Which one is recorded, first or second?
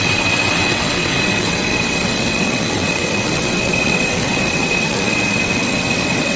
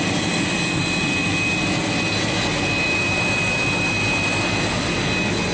second